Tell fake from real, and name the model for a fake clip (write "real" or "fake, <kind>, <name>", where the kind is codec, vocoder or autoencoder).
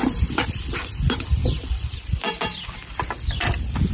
fake, vocoder, BigVGAN v2